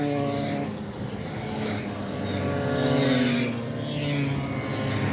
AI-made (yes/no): no